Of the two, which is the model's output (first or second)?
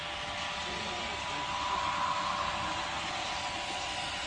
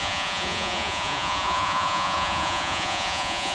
second